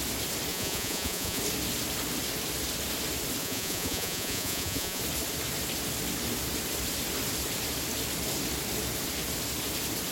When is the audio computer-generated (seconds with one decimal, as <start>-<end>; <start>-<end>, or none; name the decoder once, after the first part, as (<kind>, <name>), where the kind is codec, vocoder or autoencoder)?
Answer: 0.5-1.4 (vocoder, Vocos); 3.4-5.0